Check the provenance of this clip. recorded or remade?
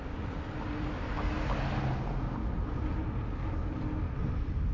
recorded